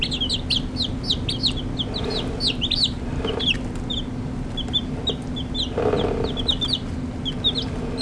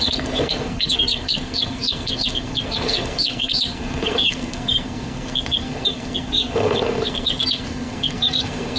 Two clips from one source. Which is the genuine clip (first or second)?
first